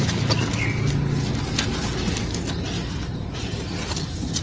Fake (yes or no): no